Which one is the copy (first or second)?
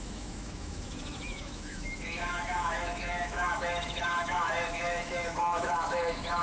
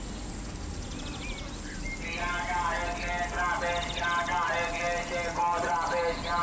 first